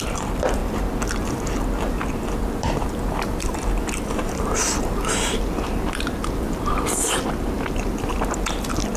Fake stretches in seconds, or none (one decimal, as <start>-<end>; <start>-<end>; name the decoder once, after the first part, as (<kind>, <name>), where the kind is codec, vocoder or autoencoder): 0.0-0.6 (vocoder, BigVGAN v2); 1.9-9.0